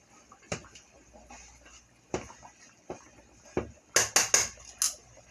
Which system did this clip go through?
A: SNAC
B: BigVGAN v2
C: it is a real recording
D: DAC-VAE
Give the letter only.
C